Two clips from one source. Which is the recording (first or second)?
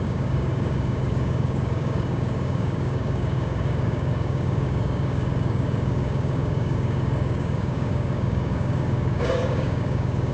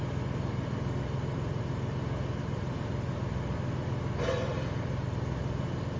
second